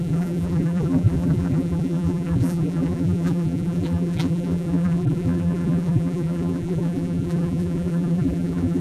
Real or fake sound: fake